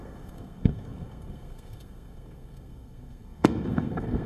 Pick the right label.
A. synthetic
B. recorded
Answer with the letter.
A